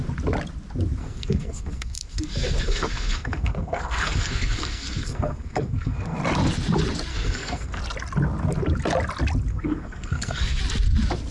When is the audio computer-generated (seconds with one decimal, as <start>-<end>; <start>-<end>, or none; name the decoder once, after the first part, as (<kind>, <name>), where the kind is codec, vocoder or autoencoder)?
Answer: 1.0-6.2 (codec, SNAC); 7.1-7.8; 9.5-10.6